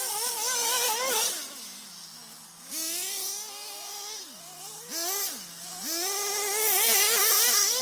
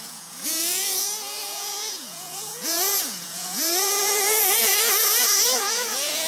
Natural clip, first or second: first